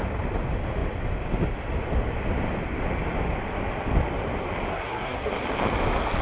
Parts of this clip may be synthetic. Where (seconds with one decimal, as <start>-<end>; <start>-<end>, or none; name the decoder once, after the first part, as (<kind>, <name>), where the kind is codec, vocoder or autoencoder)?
4.7-5.3 (codec, SNAC)